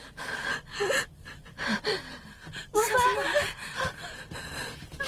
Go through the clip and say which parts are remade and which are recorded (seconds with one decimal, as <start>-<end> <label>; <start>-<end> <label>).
0.0-5.1 recorded